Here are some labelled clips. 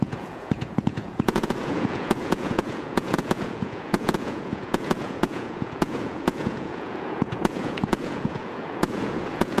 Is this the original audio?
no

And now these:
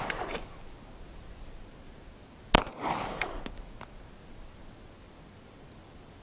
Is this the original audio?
yes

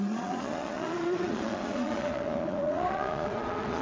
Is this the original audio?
no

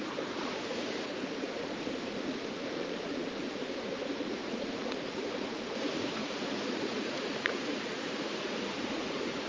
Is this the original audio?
no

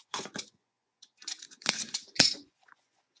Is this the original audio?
no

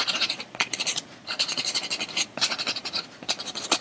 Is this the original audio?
no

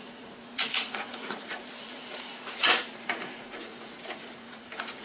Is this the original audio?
no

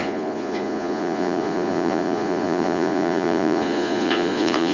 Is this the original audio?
no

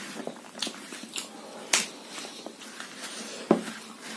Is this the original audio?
yes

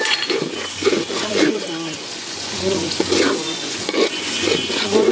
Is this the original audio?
no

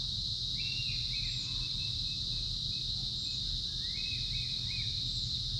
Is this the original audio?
yes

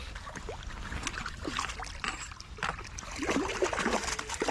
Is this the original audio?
yes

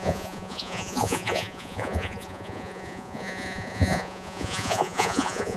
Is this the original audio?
no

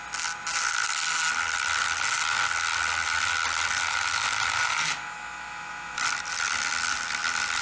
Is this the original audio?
yes